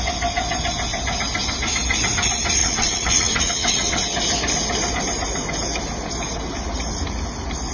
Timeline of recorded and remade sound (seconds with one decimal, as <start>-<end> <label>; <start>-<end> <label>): 0.0-2.6 recorded; 2.6-4.0 remade; 4.0-7.7 recorded